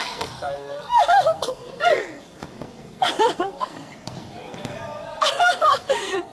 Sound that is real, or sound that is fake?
fake